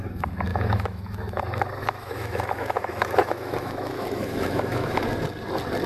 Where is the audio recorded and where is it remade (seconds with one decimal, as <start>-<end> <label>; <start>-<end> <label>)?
0.0-0.5 recorded; 0.5-1.4 remade; 1.4-1.8 recorded; 1.8-5.0 remade; 5.0-5.9 recorded